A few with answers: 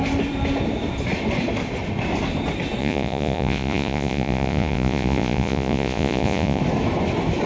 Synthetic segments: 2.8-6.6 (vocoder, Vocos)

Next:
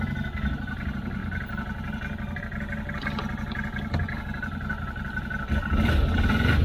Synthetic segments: none

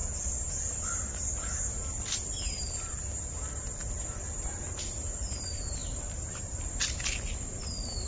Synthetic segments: none

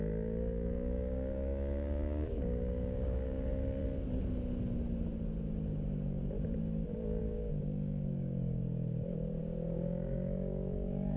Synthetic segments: 0.0-3.8 (codec, DAC); 7.2-8.6; 9.4-11.2